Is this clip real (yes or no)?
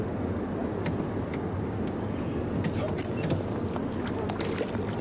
yes